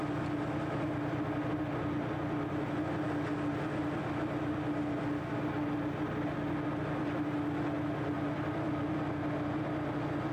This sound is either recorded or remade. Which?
recorded